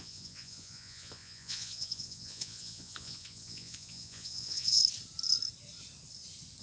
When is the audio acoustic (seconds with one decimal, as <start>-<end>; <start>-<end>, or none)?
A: 4.8-6.6